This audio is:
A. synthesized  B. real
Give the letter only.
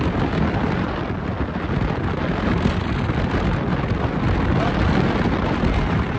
B